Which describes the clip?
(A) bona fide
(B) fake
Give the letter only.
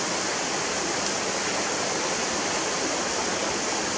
A